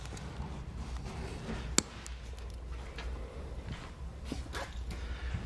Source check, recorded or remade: recorded